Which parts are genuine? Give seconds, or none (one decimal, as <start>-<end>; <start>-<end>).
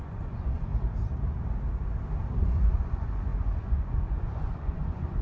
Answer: 0.7-2.4